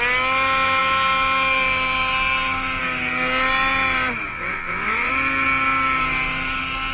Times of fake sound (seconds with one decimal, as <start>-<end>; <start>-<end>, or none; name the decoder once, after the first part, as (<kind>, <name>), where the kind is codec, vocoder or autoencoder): 4.3-5.1 (vocoder, WaveNeXt)